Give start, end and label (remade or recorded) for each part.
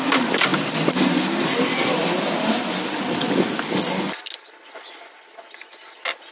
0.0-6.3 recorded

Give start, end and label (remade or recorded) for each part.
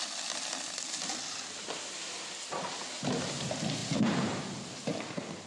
0.0-2.0 remade; 2.0-3.8 recorded; 3.8-4.4 remade; 4.4-5.5 recorded